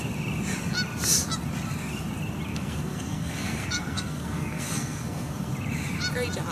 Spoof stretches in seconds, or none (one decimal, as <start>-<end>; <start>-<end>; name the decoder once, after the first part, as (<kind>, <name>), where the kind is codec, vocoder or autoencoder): 2.5-5.5 (codec, SNAC)